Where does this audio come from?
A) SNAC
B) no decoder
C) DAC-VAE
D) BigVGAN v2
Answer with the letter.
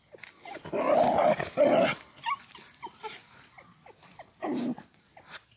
D